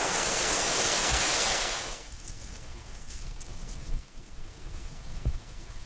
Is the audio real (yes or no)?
no